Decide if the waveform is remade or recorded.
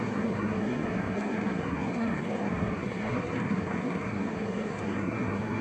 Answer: remade